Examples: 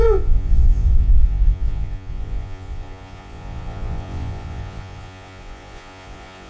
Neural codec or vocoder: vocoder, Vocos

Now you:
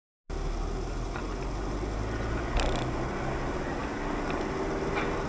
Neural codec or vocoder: none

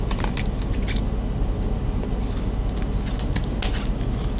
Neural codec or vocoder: none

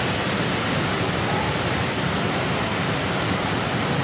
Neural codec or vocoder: none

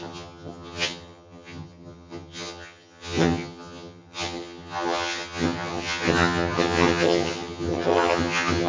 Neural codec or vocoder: vocoder, HiFi-GAN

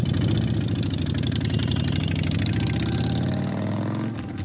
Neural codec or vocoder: none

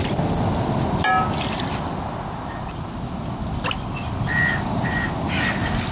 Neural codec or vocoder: none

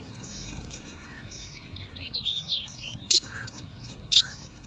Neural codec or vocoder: codec, SNAC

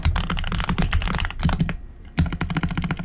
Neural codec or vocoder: none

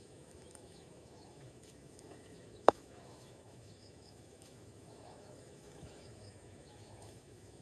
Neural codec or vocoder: autoencoder, DAC-VAE